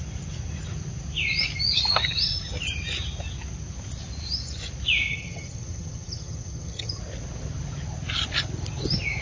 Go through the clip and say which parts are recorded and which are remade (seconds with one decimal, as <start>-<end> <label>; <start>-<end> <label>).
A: 0.0-5.1 recorded; 5.1-7.0 remade; 7.0-9.2 recorded